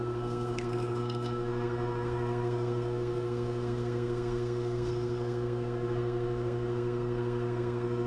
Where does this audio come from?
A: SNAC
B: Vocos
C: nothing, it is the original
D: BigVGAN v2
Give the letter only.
A